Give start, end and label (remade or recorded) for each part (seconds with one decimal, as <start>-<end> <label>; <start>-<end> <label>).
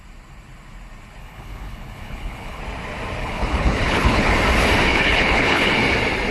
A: 0.0-1.2 recorded; 1.2-2.6 remade; 2.6-3.2 recorded; 3.2-4.3 remade; 4.3-4.9 recorded; 4.9-5.7 remade; 5.7-6.3 recorded